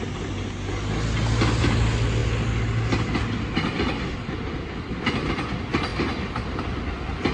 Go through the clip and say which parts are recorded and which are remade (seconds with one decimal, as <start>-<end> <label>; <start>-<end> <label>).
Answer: 0.0-7.3 recorded